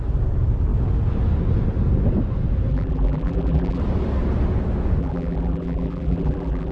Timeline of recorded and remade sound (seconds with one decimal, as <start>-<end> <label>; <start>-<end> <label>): 0.0-2.7 recorded; 2.7-3.8 remade; 3.8-5.0 recorded; 5.0-6.7 remade